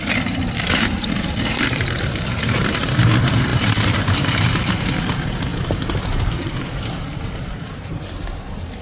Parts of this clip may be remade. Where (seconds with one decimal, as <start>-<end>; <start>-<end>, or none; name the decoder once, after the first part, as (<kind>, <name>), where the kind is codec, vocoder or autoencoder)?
0.0-8.8 (vocoder, BigVGAN v2)